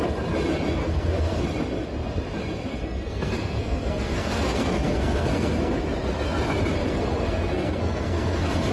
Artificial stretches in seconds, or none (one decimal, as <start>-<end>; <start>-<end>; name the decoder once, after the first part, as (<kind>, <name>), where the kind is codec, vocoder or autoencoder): 0.8-1.4 (codec, SNAC); 2.7-5.8; 6.8-8.7